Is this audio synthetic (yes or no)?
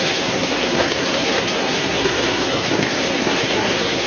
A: yes